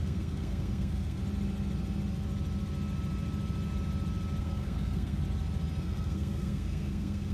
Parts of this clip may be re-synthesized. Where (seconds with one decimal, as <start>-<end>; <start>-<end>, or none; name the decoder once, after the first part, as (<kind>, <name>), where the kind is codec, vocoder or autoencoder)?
0.0-1.2 (codec, SNAC); 4.4-5.2; 5.8-7.3